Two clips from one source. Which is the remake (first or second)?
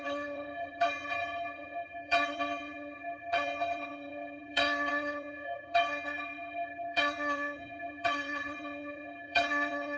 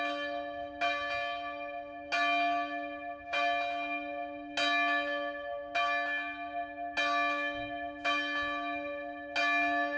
first